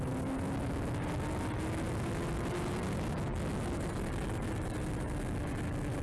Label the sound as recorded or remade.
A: recorded